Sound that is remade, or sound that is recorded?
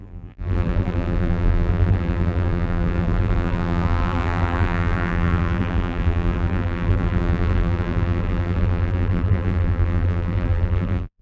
remade